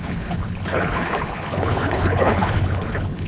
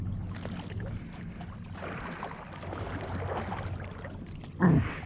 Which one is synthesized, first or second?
first